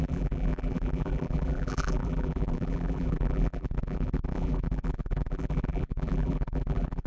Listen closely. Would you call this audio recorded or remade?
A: remade